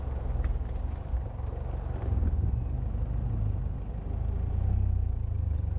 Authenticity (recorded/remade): recorded